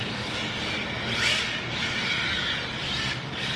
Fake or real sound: real